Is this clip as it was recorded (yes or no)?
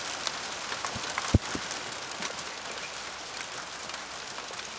yes